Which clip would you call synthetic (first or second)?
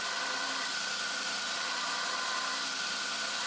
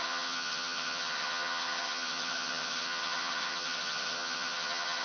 second